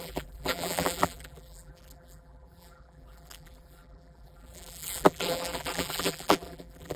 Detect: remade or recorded remade